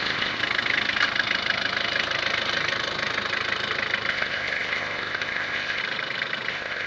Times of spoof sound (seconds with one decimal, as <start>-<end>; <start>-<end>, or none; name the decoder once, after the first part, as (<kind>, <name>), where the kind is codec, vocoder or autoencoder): 0.0-0.4 (codec, ZipCodec); 4.1-5.8; 6.5-6.9